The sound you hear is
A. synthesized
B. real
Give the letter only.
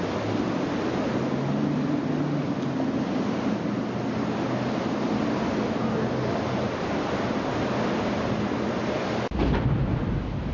B